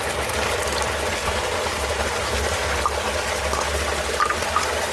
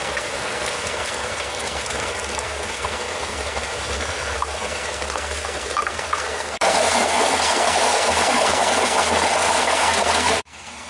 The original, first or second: first